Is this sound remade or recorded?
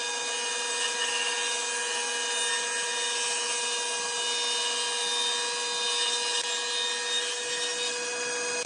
recorded